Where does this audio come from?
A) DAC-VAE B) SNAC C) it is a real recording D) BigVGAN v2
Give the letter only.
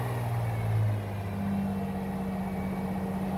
C